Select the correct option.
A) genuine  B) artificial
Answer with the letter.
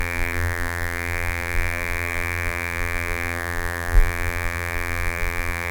B